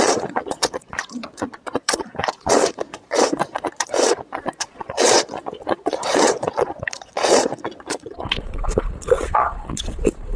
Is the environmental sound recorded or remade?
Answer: remade